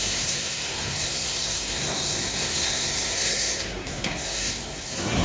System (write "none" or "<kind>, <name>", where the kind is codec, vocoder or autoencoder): codec, SNAC